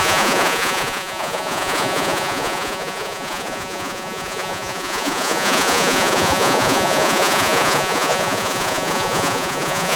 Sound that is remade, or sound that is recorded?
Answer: remade